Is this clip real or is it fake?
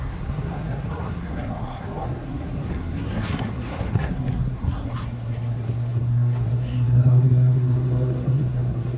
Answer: fake